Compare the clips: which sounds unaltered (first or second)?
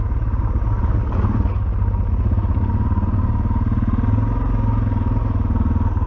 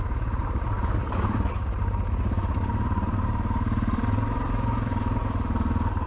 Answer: first